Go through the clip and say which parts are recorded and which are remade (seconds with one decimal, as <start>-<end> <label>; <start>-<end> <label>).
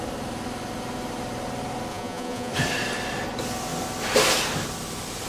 0.0-1.9 recorded; 1.9-2.5 remade; 2.5-5.3 recorded